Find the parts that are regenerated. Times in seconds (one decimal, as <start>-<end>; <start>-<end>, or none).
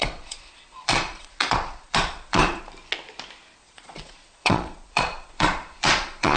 0.0-2.6; 3.6-6.4